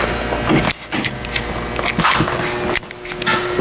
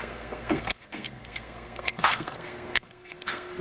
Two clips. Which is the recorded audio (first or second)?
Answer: first